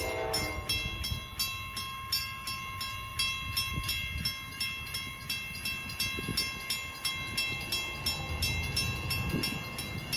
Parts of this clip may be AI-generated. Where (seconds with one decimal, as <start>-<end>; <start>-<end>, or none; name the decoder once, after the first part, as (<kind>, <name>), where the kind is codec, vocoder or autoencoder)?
none